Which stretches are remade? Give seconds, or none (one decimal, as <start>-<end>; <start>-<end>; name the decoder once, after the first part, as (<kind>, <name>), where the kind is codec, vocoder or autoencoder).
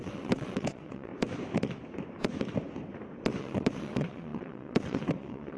0.0-1.1 (vocoder, WaveNeXt); 3.4-5.6